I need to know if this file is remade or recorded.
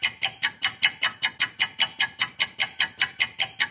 recorded